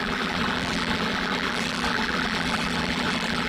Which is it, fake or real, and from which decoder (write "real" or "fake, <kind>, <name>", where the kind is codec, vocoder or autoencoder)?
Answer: fake, vocoder, BigVGAN v2